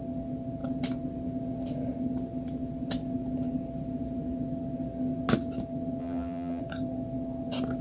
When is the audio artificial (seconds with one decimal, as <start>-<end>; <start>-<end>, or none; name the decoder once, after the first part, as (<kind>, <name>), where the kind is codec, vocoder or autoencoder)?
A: 6.0-6.6 (vocoder, BigVGAN v2)